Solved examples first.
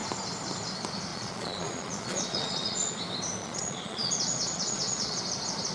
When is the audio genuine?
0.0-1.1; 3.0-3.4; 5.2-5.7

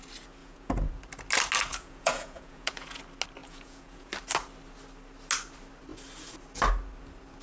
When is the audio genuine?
0.0-0.4; 0.9-1.7; 3.0-3.4; 4.1-7.4

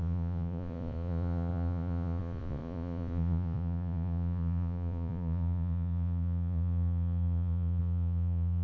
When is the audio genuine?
none

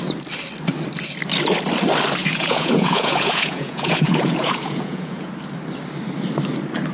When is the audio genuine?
0.0-2.2; 5.3-6.9

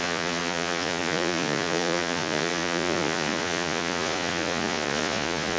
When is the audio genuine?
none

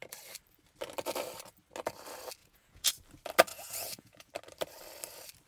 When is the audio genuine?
0.0-2.4; 2.9-3.5; 4.3-5.5

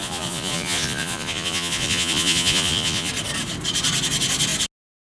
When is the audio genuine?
3.1-5.1